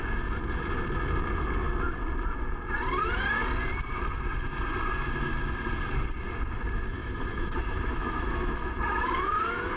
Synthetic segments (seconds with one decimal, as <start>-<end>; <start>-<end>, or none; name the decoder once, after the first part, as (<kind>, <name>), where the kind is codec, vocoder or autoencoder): 7.0-9.8 (autoencoder, DAC-VAE)